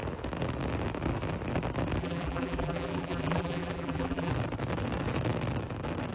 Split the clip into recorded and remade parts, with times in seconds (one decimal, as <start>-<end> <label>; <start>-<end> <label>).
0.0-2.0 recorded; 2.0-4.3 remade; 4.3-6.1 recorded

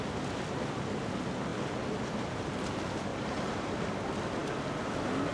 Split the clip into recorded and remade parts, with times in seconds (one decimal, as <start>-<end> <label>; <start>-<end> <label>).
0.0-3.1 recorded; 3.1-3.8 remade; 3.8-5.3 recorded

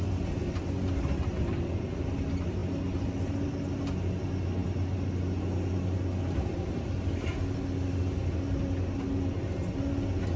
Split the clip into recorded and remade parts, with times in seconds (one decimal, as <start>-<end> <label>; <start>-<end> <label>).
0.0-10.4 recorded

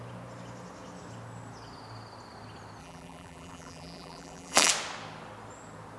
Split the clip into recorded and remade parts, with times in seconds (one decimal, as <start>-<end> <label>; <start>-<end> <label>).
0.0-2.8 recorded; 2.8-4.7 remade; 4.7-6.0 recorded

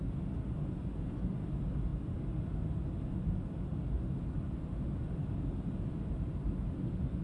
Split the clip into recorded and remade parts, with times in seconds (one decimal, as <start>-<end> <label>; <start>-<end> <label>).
0.0-7.2 recorded

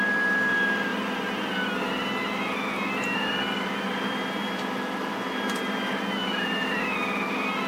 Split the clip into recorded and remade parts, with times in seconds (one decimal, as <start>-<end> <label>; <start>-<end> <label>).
0.0-7.7 recorded

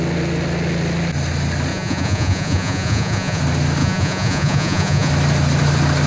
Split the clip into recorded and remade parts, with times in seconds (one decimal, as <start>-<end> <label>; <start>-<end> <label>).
0.0-1.7 recorded; 1.7-3.4 remade; 3.4-3.8 recorded; 3.8-5.1 remade; 5.1-6.1 recorded